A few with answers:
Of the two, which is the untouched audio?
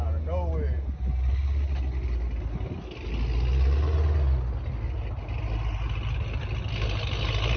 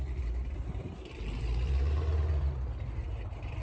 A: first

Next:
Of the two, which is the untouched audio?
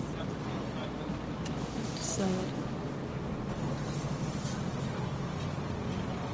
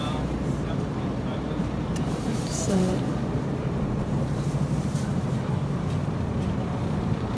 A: first